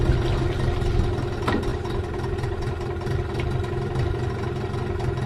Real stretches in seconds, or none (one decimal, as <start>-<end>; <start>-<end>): 0.0-5.3